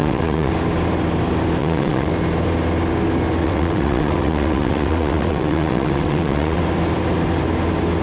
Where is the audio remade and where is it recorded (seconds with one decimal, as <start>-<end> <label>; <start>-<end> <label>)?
0.0-0.5 remade; 0.5-1.6 recorded; 1.6-2.1 remade; 2.1-3.4 recorded; 3.4-6.6 remade; 6.6-8.0 recorded